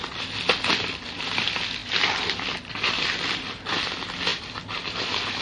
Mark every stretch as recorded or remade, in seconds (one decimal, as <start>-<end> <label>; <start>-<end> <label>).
0.0-1.8 recorded; 1.8-3.6 remade; 3.6-4.3 recorded; 4.3-5.4 remade